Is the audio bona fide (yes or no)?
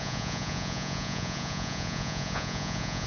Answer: no